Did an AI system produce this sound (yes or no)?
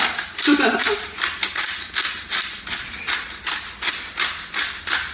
no